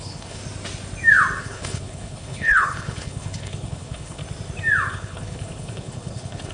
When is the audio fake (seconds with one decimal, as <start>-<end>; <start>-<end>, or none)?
0.0-0.4; 1.4-4.2; 4.9-6.5